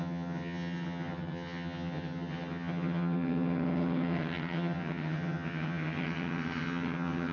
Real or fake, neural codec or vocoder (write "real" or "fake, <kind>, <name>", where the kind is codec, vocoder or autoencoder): fake, vocoder, HiFi-GAN